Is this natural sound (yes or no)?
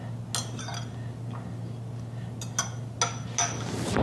yes